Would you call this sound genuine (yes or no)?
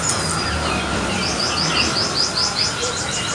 yes